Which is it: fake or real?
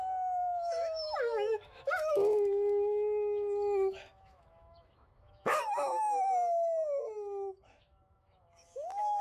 fake